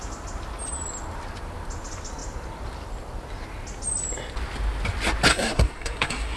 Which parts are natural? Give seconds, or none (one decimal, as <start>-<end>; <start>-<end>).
0.0-5.3